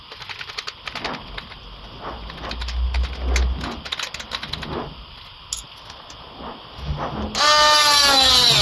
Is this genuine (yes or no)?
yes